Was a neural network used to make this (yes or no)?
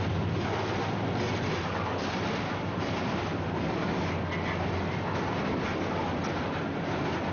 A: no